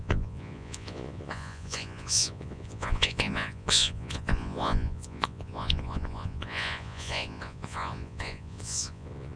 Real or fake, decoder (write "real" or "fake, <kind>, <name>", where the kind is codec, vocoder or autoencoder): fake, vocoder, Vocos